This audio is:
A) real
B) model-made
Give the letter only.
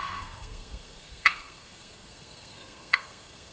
B